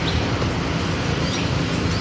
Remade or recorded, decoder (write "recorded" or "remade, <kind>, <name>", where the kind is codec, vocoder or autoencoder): recorded